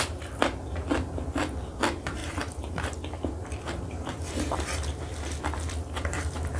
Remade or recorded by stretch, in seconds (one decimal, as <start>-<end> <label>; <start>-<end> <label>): 0.0-2.2 recorded; 2.2-3.0 remade; 3.0-6.6 recorded